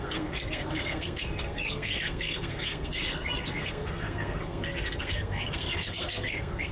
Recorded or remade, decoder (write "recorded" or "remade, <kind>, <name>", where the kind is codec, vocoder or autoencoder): remade, codec, SNAC